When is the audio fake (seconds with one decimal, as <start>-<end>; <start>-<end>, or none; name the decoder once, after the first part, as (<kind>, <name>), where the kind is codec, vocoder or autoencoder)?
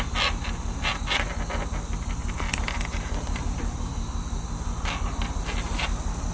none